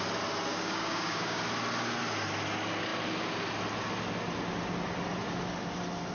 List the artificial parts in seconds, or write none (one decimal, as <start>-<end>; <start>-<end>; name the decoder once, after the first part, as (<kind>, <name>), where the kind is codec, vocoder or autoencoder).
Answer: 0.5-1.4 (codec, DAC)